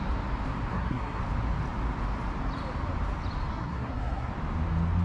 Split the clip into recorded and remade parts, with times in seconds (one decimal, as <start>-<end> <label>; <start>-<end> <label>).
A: 0.0-0.7 recorded; 0.7-1.2 remade; 1.2-3.5 recorded; 3.5-4.3 remade; 4.3-5.0 recorded

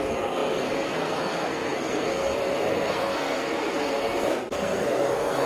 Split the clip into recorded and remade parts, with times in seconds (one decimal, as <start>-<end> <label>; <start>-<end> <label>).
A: 0.0-5.5 remade

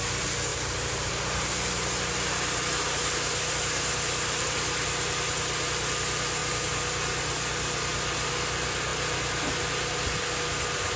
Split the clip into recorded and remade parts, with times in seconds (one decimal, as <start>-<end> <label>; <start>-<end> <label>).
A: 0.0-0.5 recorded; 0.5-1.1 remade; 1.1-11.0 recorded

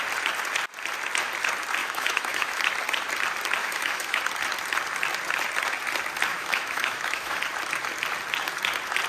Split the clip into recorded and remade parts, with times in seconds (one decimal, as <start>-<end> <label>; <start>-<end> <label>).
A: 0.0-1.8 recorded; 1.8-2.6 remade; 2.6-3.6 recorded; 3.6-4.2 remade; 4.2-6.3 recorded; 6.3-7.4 remade; 7.4-9.1 recorded

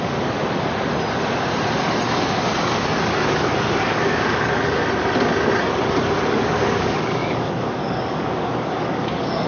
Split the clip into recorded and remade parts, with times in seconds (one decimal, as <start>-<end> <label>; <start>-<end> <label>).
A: 0.0-0.4 remade; 0.4-2.6 recorded; 2.6-4.8 remade; 4.8-6.3 recorded; 6.3-9.5 remade

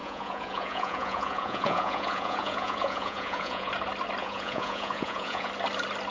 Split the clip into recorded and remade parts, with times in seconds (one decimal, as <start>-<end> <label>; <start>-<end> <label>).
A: 0.0-3.7 remade; 3.7-4.2 recorded; 4.2-5.5 remade; 5.5-6.1 recorded

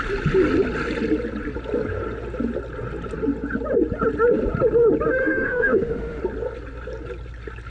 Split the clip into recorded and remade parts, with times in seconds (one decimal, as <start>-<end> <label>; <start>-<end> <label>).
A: 0.0-5.2 recorded; 5.2-6.2 remade; 6.2-7.7 recorded

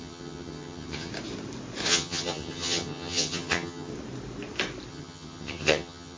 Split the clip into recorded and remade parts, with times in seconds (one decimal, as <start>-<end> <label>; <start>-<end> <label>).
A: 0.0-1.1 remade; 1.1-1.9 recorded; 1.9-3.9 remade; 3.9-4.9 recorded; 4.9-6.2 remade